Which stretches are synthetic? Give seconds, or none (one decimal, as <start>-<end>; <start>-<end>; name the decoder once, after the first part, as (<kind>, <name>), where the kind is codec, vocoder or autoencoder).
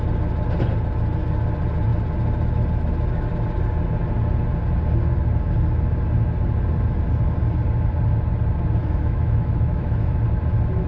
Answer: 8.8-10.2 (autoencoder, DAC-VAE)